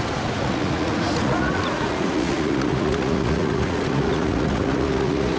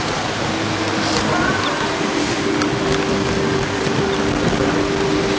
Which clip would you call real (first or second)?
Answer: second